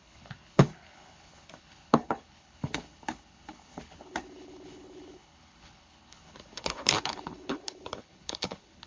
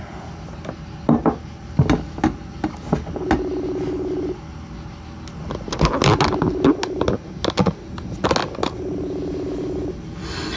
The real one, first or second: second